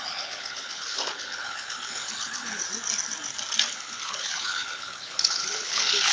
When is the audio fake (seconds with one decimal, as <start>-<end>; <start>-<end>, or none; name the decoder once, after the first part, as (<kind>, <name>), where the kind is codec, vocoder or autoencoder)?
0.0-2.6 (codec, HILCodec); 3.7-6.1